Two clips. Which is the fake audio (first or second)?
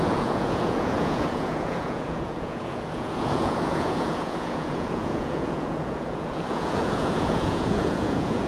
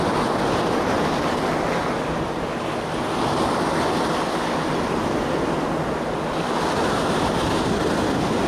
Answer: first